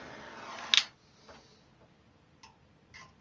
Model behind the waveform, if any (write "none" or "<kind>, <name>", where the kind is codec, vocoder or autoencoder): none